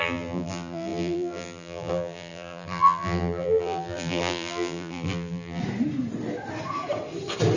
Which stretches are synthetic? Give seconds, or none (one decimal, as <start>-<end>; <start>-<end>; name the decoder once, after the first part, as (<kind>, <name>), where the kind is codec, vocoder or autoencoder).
0.0-5.6 (vocoder, BigVGAN v2)